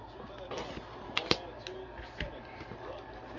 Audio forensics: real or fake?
real